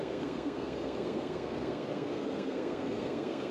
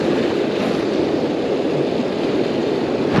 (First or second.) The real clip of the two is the second